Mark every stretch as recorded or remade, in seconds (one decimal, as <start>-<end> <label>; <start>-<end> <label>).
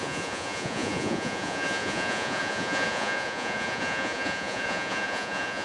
0.0-5.6 remade